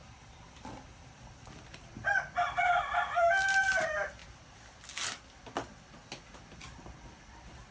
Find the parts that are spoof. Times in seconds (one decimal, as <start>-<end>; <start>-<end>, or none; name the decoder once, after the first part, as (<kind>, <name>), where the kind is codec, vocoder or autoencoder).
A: 1.1-4.2 (vocoder, BigVGAN v2)